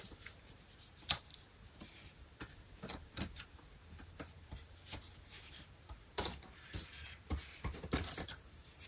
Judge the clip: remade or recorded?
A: remade